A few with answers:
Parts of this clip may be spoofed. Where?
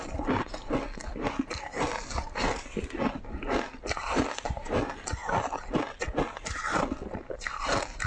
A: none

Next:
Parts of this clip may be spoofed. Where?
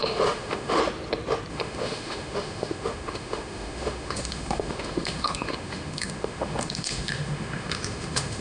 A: 0.0-0.8 (autoencoder, DAC-VAE); 1.5-8.4